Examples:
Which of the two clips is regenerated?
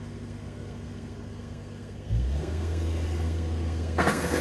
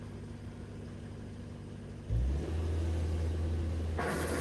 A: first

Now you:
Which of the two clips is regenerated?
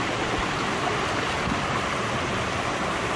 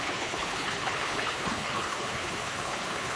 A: second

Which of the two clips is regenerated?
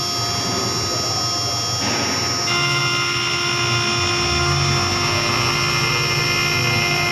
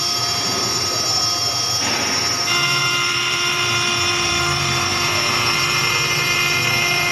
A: second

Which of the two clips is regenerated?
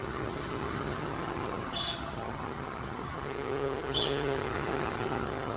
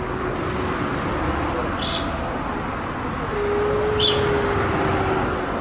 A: first